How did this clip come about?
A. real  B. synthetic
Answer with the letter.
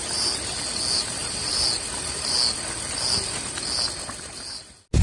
A